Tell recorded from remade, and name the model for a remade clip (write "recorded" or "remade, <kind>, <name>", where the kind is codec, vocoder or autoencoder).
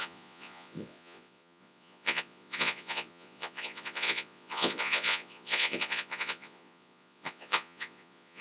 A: remade, vocoder, Vocos